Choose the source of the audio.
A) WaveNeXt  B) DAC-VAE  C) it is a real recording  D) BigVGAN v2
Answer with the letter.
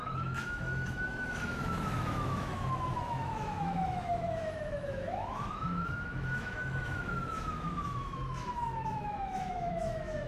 B